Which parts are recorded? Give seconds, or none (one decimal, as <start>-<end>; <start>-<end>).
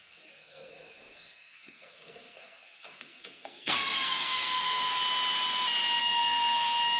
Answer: 4.9-6.0